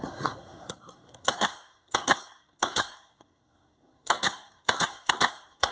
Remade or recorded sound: remade